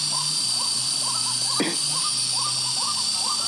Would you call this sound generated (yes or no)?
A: no